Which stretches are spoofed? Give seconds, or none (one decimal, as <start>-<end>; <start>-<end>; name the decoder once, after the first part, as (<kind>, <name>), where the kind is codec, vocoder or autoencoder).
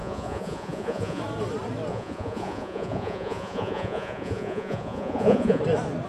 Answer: 0.0-1.2 (vocoder, Vocos); 1.9-5.6